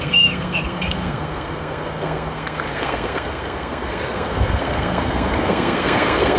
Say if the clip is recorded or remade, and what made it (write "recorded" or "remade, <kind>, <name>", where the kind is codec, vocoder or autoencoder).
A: remade, codec, SNAC